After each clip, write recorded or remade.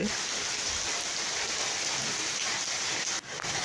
recorded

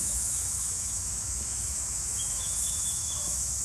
remade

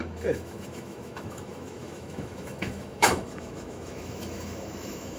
remade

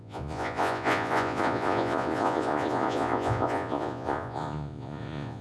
remade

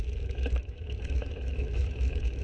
remade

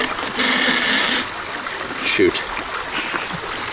recorded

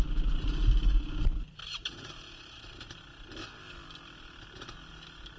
recorded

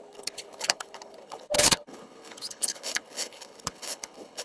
remade